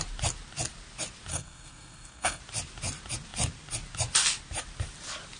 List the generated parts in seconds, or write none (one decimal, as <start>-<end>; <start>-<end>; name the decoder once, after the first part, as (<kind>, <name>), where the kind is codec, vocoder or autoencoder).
1.3-2.4 (codec, SNAC)